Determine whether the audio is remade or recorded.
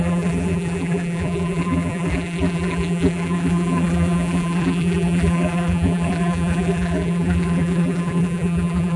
remade